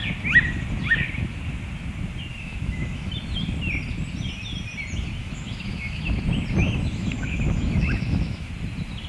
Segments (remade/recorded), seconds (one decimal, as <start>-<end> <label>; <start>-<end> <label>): 0.0-2.3 recorded; 2.3-3.1 remade; 3.1-5.2 recorded; 5.2-6.0 remade; 6.0-6.6 recorded; 6.6-8.5 remade; 8.5-9.1 recorded